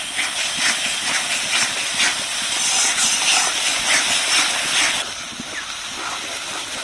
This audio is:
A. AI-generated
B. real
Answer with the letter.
B